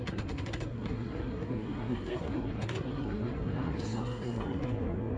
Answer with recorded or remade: remade